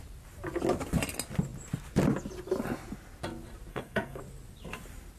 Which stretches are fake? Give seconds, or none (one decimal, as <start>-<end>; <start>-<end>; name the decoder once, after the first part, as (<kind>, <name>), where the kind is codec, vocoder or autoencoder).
3.7-4.2 (codec, SNAC)